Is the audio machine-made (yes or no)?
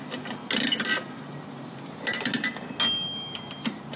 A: no